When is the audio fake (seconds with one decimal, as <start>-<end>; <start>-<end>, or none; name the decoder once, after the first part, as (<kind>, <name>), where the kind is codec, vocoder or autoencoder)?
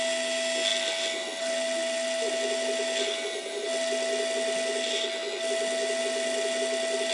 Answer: none